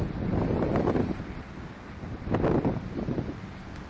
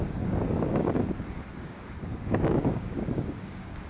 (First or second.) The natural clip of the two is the first